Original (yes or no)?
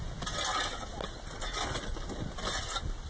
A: yes